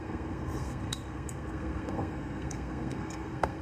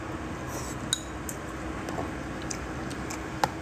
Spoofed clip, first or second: first